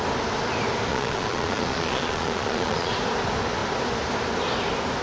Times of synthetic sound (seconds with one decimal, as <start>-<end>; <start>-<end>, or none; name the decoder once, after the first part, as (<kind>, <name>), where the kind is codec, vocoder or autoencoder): 0.9-2.9 (vocoder, Vocos)

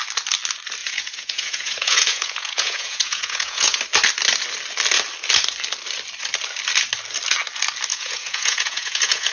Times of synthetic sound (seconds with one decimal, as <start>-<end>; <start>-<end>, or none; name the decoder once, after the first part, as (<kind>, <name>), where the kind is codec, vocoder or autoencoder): 0.8-3.8 (vocoder, Vocos); 7.9-9.3